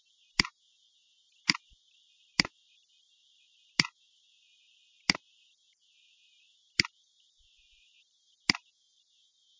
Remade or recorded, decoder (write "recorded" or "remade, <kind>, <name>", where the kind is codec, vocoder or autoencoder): recorded